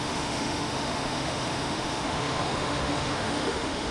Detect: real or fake fake